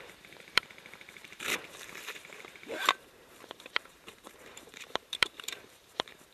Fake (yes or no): yes